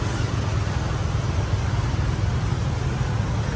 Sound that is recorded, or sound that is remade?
recorded